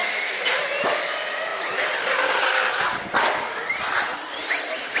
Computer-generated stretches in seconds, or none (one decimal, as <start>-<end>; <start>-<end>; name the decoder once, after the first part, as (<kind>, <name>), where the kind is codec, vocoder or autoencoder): none